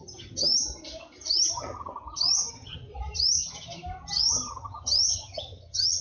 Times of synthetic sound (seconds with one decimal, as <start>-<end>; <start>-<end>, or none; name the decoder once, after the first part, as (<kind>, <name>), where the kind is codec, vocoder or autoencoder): 0.0-0.5 (vocoder, HiFi-GAN); 1.5-1.9; 2.5-2.9; 4.5-6.0